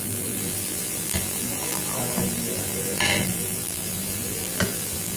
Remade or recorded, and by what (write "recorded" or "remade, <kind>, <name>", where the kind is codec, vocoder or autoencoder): remade, vocoder, BigVGAN v2